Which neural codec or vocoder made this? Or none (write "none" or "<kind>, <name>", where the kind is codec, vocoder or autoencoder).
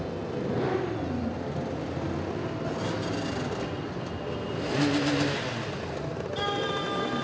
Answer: none